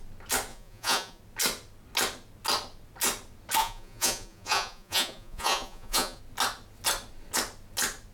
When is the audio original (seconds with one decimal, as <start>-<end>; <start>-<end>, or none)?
0.0-0.5; 1.2-3.6; 6.2-8.1